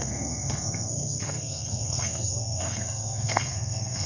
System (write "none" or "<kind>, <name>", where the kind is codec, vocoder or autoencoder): codec, SNAC